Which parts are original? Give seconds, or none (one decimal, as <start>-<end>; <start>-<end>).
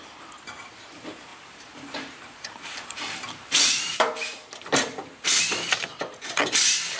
0.0-1.3; 5.4-7.0